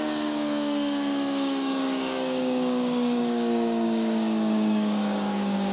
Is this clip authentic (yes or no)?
no